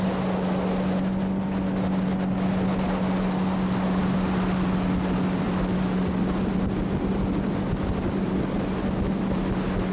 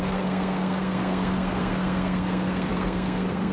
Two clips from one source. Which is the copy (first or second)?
second